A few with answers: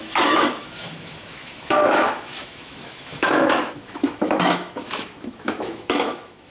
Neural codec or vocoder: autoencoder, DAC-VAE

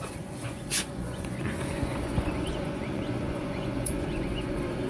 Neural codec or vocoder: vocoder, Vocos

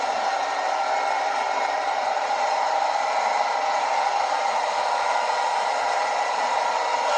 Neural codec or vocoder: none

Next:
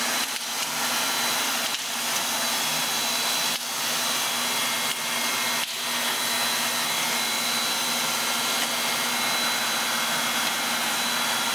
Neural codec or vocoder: none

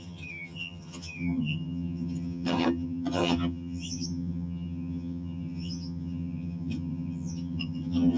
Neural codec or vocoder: vocoder, HiFi-GAN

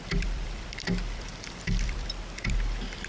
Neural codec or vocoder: vocoder, BigVGAN v2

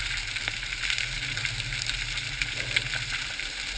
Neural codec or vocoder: none